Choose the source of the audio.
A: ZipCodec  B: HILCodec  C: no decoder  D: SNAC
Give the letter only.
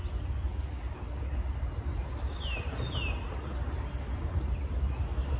C